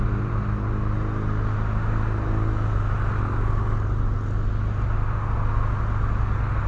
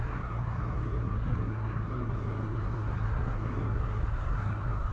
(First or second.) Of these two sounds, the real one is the first